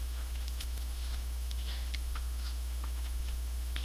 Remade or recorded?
remade